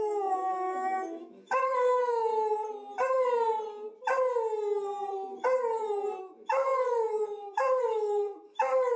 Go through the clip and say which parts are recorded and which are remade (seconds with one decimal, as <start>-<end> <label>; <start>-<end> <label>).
0.0-2.3 remade; 2.3-6.2 recorded; 6.2-9.0 remade